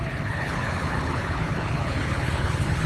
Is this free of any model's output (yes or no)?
no